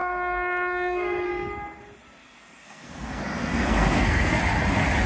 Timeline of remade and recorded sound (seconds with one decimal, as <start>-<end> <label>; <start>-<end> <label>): 0.0-1.3 remade; 1.3-2.2 recorded; 2.2-4.4 remade; 4.4-5.1 recorded